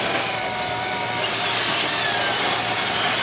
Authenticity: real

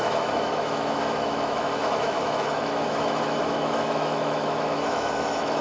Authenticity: fake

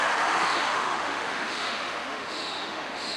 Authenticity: fake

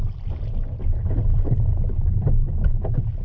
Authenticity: real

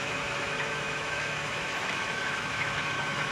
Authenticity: fake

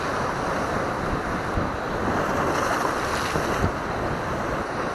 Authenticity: real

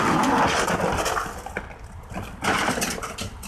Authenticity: real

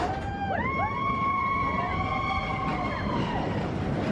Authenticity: real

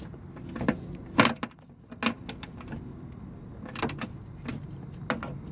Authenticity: real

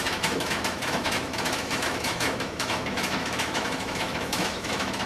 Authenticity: fake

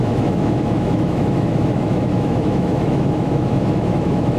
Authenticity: fake